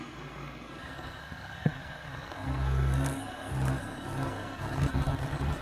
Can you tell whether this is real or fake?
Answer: fake